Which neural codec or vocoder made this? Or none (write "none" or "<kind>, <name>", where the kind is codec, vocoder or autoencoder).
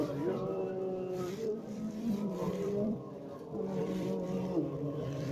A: vocoder, BigVGAN v2